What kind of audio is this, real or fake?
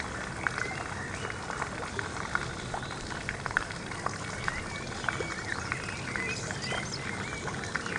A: real